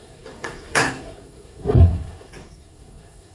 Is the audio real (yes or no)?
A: no